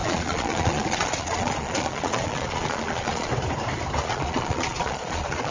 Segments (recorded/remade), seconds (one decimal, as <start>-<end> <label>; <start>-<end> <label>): 0.0-3.3 remade; 3.3-4.0 recorded; 4.0-5.5 remade